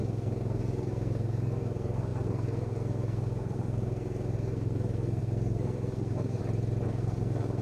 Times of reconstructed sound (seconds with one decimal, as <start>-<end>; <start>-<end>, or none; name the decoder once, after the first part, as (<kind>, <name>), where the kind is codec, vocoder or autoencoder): 0.0-6.4 (codec, SNAC); 6.9-7.6